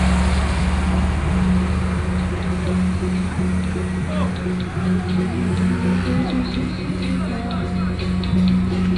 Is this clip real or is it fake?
real